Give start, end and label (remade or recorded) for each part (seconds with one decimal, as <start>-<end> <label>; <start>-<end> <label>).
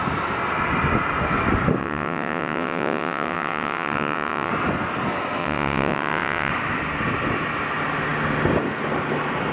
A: 0.0-1.8 recorded; 1.8-4.5 remade; 4.5-5.4 recorded; 5.4-6.5 remade; 6.5-9.5 recorded